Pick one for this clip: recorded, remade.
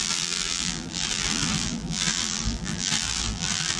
remade